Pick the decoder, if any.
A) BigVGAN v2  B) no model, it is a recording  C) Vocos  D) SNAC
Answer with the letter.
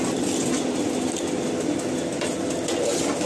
B